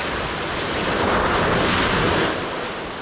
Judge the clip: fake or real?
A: real